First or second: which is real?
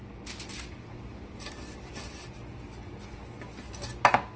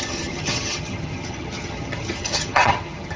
first